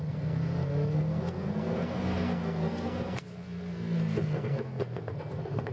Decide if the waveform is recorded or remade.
remade